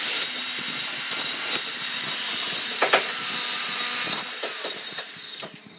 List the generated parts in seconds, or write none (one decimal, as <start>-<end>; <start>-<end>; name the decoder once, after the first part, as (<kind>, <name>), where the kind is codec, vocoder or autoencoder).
none